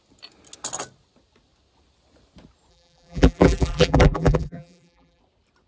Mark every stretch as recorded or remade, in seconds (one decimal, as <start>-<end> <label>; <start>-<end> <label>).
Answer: 0.0-2.7 recorded; 2.7-5.2 remade; 5.2-5.7 recorded